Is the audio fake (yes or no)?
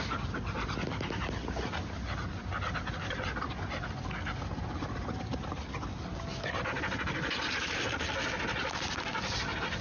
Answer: no